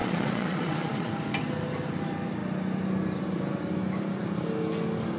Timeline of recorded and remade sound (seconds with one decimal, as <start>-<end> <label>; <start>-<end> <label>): 0.0-1.1 remade; 1.1-5.2 recorded